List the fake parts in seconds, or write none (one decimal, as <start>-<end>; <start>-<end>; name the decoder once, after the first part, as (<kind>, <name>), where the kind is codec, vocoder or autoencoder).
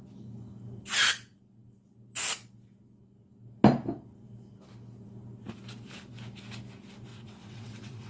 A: 7.1-8.1 (vocoder, WaveNeXt)